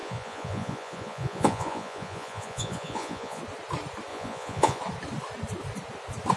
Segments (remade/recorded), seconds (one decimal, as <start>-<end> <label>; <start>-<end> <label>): 0.0-3.4 remade; 3.4-4.1 recorded; 4.1-4.8 remade; 4.8-6.4 recorded